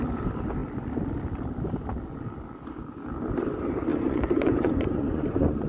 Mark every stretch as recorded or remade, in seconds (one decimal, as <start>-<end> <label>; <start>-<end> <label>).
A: 0.0-3.9 recorded; 3.9-5.7 remade